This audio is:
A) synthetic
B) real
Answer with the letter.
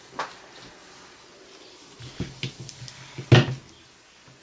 B